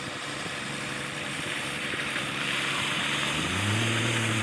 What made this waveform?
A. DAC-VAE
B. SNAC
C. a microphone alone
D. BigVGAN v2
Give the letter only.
D